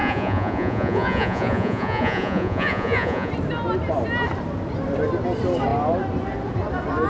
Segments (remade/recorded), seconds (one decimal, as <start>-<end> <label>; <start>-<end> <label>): 0.0-3.3 remade; 3.3-7.1 recorded